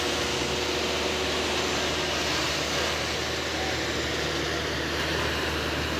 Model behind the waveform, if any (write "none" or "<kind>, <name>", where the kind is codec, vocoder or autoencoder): none